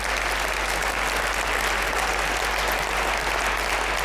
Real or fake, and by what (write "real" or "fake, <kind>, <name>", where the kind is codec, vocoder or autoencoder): real